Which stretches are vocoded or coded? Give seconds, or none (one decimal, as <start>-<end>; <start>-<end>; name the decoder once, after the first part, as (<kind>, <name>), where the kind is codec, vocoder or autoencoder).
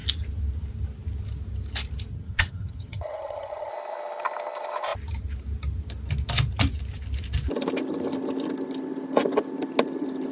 2.1-3.7 (vocoder, HiFi-GAN)